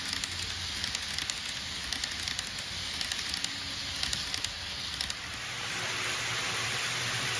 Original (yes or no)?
yes